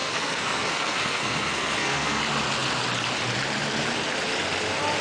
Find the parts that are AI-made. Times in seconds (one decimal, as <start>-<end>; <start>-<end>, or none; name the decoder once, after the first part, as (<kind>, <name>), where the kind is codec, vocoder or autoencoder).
0.0-2.2 (codec, SNAC)